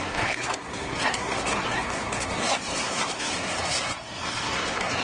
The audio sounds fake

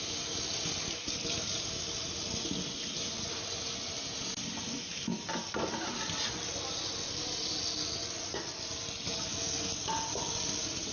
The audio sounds real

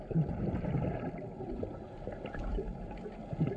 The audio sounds real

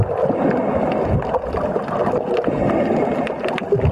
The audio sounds real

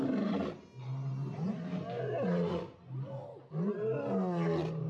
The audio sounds real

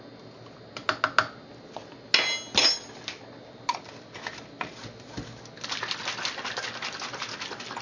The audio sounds real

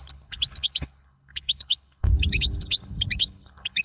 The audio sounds fake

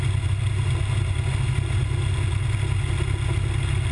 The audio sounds real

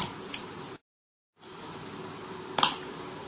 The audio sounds fake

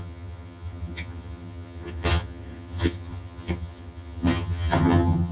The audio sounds fake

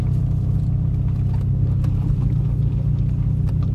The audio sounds real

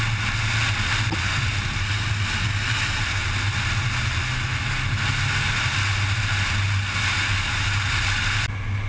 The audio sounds real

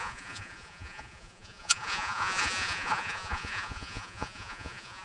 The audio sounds fake